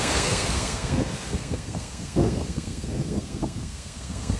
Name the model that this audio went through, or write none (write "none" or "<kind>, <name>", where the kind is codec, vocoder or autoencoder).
codec, SNAC